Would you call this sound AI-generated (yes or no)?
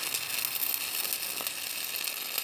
no